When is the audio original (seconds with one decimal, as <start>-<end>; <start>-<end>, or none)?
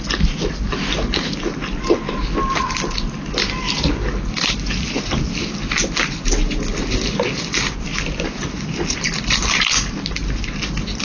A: 0.0-11.0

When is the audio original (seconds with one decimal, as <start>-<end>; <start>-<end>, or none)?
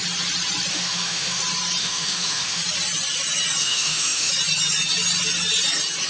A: 0.0-0.7; 1.4-1.8; 2.6-3.6; 4.3-6.1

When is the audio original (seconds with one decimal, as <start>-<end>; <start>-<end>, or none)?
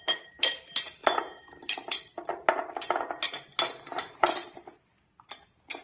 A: 0.0-1.0; 3.3-5.8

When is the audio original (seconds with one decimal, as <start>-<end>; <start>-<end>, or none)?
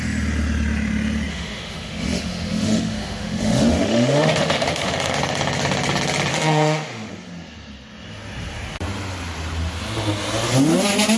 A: 0.0-1.3; 5.2-6.3; 7.1-11.2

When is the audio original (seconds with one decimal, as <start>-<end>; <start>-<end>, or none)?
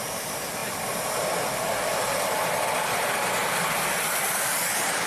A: 0.0-5.1